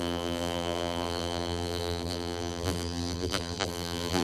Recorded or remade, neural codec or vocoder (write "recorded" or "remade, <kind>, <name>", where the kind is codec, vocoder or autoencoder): remade, vocoder, BigVGAN v2